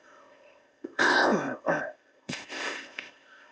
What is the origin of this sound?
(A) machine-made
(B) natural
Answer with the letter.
A